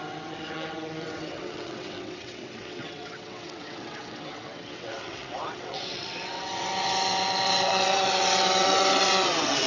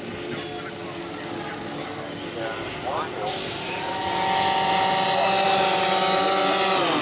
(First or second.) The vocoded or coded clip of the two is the first